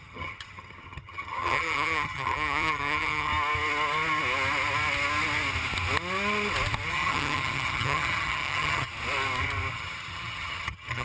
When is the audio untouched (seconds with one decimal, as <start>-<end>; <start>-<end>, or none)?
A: 3.3-6.9; 8.9-9.7